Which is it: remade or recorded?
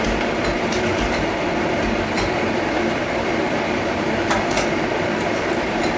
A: remade